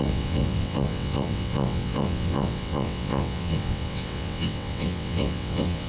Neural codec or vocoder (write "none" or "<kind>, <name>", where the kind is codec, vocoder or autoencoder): vocoder, WaveNeXt